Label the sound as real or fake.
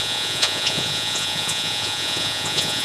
fake